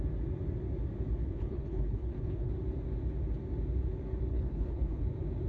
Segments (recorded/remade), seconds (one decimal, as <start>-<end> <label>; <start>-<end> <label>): 0.0-1.2 recorded; 1.2-2.5 remade; 2.5-4.3 recorded; 4.3-5.0 remade; 5.0-5.5 recorded